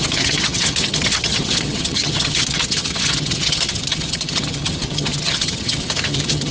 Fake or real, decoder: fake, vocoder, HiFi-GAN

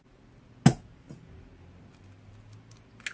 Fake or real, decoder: real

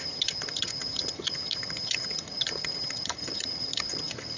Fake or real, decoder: fake, vocoder, HiFi-GAN